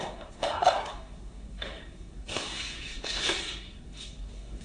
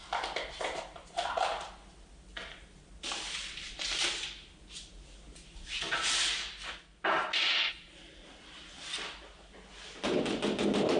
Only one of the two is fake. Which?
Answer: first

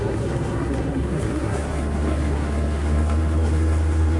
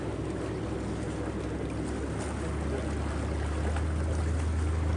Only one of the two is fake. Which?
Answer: first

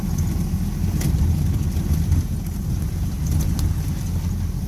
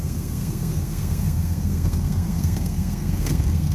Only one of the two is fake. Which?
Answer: second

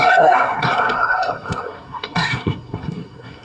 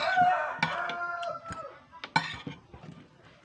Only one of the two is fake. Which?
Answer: first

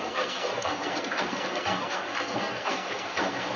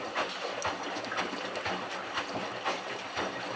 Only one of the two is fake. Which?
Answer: first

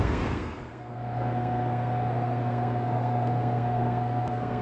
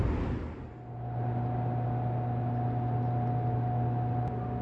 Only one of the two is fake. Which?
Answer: first